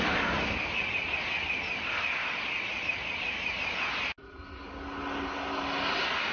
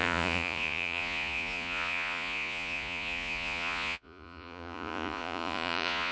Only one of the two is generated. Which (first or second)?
second